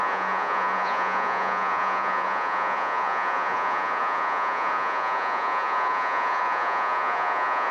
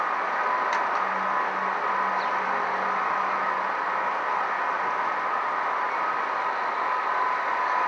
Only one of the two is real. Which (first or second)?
second